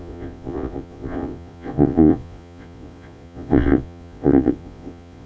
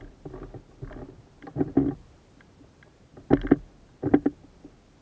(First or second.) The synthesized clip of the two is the first